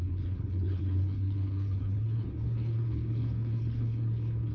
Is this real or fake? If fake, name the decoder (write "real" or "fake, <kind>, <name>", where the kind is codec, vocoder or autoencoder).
fake, codec, HILCodec